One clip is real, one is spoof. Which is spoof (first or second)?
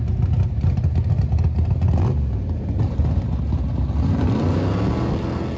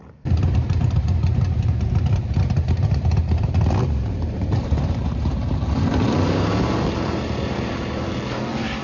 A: second